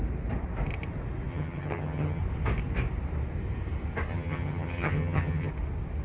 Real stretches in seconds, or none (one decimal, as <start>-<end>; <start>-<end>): 0.0-1.3; 2.2-4.1; 5.5-6.0